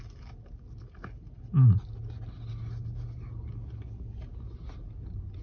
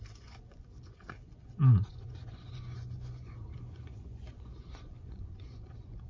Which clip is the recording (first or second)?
first